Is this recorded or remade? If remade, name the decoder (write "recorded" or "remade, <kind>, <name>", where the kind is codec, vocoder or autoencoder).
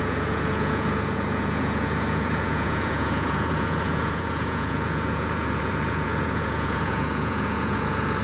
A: remade, vocoder, Vocos